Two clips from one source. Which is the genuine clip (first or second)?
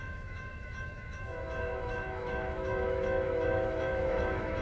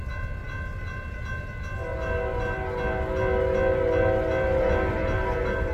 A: second